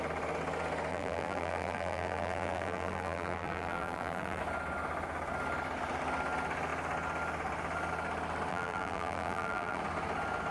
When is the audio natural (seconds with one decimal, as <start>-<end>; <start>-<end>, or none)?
0.0-0.9; 4.4-8.5; 9.8-10.5